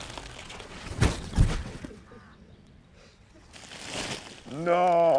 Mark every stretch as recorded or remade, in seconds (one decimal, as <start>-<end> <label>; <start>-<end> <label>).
0.0-0.4 recorded; 0.4-3.5 remade; 3.5-5.2 recorded